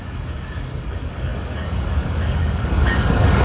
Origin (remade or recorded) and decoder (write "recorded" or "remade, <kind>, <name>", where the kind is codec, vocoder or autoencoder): remade, codec, DAC